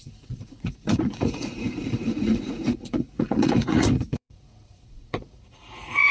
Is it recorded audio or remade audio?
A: remade